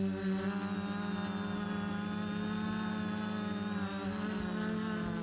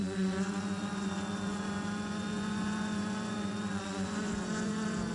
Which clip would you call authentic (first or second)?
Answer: first